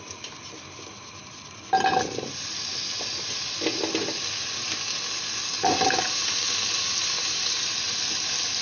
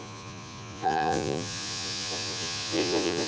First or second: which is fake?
second